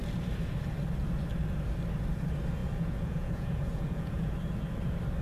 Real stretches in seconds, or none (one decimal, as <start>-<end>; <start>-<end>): 0.0-2.6; 4.3-5.2